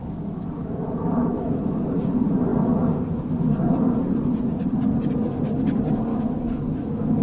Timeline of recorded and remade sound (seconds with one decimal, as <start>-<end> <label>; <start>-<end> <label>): 0.0-1.7 remade; 1.7-6.1 recorded; 6.1-7.2 remade